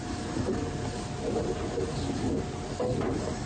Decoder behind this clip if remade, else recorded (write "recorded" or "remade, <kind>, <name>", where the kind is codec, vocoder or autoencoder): recorded